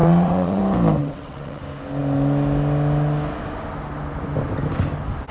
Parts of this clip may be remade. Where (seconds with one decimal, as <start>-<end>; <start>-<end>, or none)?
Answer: 0.0-0.6; 1.0-1.6